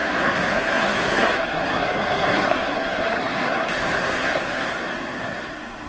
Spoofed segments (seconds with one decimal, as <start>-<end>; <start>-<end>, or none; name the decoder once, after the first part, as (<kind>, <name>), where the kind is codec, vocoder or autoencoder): 0.0-5.9 (codec, SNAC)